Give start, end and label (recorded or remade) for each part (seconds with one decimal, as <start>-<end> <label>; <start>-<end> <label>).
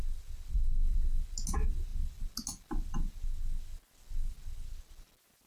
0.0-5.5 recorded